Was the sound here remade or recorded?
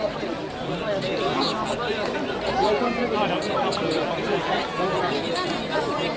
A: recorded